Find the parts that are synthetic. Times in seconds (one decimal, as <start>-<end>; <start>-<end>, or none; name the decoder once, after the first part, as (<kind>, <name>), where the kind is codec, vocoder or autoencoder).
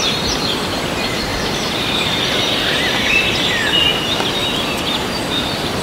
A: 1.3-3.3 (vocoder, BigVGAN v2); 3.9-5.8